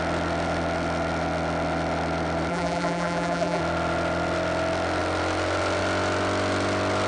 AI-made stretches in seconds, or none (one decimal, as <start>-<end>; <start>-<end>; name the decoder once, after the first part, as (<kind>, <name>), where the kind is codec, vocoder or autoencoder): 2.5-3.6 (vocoder, BigVGAN v2)